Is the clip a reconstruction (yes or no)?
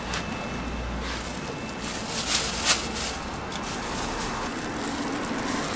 no